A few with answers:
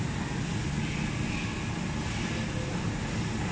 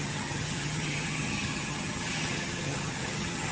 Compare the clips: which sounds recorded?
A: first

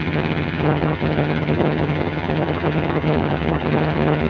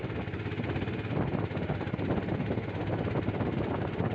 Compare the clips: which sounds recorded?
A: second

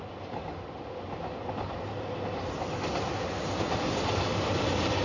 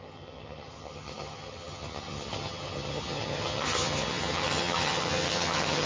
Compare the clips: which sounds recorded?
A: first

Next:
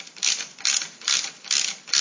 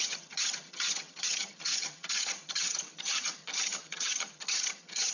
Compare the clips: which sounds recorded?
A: first